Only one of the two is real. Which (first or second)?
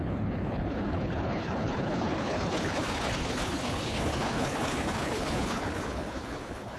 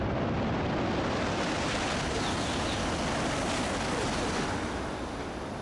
second